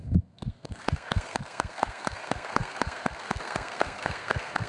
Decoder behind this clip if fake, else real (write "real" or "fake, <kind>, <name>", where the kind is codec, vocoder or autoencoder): fake, codec, SNAC